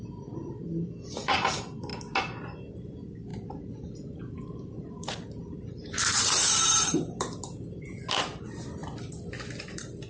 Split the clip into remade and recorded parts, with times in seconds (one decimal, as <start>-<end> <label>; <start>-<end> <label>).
0.0-1.9 remade; 1.9-2.7 recorded; 2.7-8.8 remade; 8.8-9.6 recorded; 9.6-10.1 remade